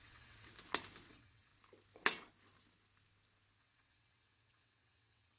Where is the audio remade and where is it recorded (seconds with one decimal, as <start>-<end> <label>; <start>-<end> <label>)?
0.0-0.5 remade; 0.5-1.1 recorded; 1.1-1.5 remade; 1.5-3.6 recorded; 3.6-5.4 remade